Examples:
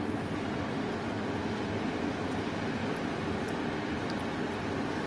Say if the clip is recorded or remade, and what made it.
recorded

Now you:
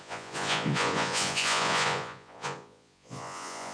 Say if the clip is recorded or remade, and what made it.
remade, vocoder, Vocos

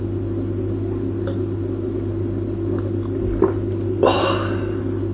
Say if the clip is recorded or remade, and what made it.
recorded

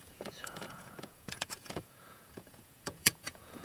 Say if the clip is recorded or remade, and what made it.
remade, vocoder, Vocos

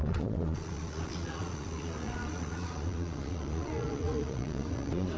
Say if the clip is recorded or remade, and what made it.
remade, vocoder, Vocos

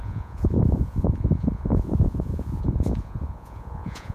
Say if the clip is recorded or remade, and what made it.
remade, vocoder, Vocos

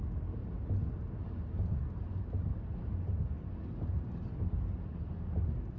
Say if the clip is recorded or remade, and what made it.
recorded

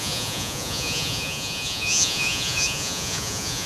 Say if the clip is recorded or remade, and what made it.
remade, vocoder, Vocos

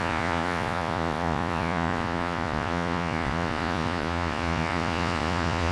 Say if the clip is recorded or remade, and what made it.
remade, vocoder, Vocos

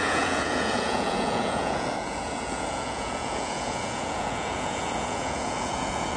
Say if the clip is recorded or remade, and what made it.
remade, vocoder, Vocos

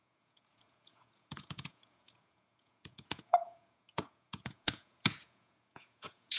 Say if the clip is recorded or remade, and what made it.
remade, vocoder, Vocos